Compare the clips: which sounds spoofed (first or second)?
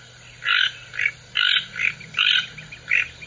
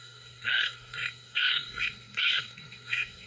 second